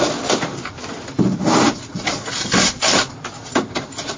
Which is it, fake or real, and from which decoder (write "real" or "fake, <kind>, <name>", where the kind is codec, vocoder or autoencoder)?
real